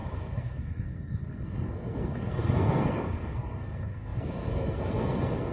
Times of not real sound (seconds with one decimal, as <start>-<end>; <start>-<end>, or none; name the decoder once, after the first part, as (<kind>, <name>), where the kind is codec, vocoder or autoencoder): 0.0-5.5 (codec, SNAC)